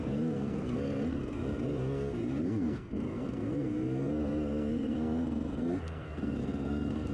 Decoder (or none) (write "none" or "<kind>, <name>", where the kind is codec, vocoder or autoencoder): codec, SNAC